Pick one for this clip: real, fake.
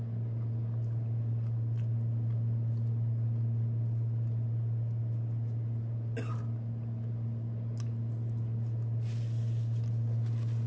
real